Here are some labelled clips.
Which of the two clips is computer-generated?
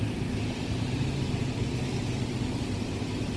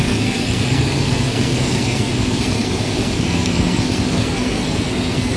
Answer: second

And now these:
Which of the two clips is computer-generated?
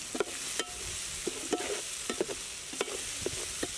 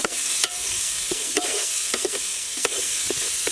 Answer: second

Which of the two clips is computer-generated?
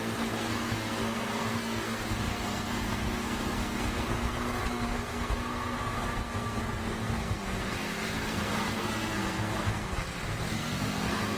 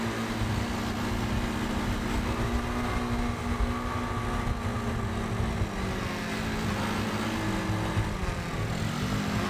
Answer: first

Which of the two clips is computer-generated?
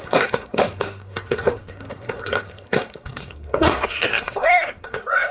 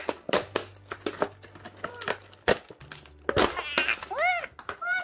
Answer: first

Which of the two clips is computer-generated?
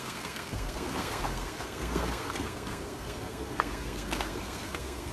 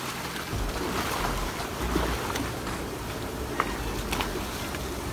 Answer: first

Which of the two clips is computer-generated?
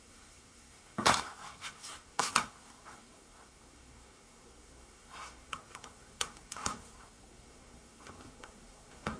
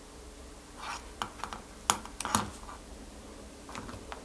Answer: first